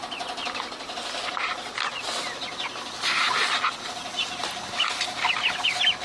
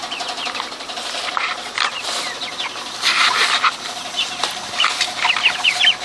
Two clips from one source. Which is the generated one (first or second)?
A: second